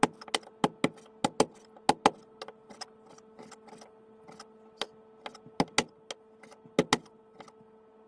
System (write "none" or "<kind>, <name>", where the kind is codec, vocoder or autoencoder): none